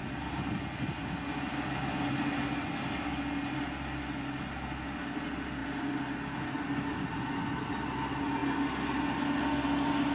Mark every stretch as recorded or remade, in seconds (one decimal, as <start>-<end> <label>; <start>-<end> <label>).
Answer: 0.0-10.1 recorded